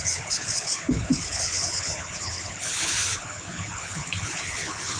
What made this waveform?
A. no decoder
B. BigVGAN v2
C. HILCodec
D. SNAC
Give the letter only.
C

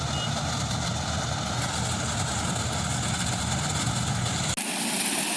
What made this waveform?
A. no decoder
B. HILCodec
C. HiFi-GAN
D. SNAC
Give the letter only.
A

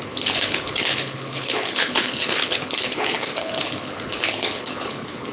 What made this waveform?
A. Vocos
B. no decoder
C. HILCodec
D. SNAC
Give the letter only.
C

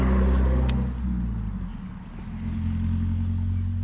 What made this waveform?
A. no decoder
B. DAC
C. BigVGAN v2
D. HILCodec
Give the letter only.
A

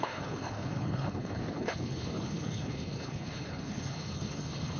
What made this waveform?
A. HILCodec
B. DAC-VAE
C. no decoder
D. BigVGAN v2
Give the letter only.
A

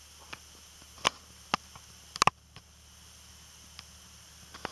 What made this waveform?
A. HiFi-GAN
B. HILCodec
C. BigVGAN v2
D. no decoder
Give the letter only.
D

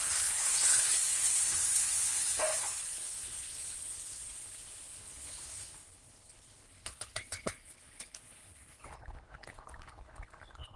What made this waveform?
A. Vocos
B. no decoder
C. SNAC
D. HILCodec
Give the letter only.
D